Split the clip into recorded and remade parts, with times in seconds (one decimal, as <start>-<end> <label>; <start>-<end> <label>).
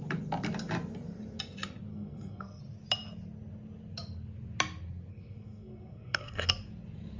0.0-1.9 recorded; 1.9-2.6 remade; 2.6-5.1 recorded; 5.1-6.5 remade; 6.5-7.2 recorded